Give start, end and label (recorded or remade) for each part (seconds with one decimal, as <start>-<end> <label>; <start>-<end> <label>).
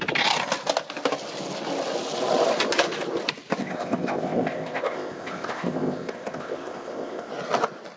0.0-3.6 recorded; 3.6-7.3 remade; 7.3-8.0 recorded